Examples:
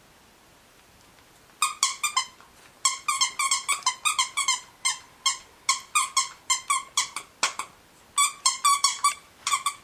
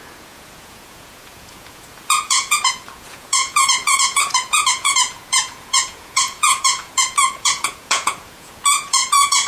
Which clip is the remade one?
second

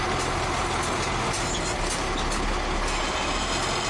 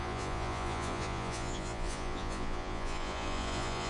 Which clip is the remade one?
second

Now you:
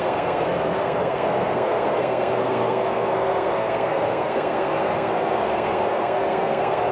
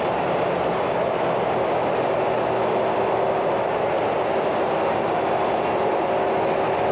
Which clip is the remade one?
first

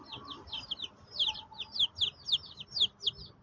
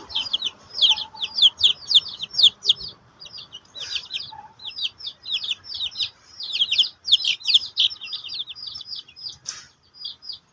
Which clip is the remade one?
second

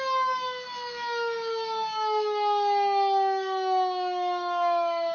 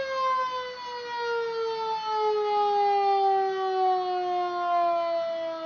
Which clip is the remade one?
first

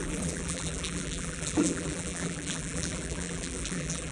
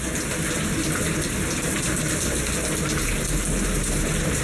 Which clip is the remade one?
first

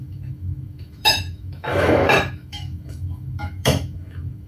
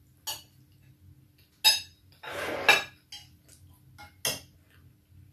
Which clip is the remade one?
first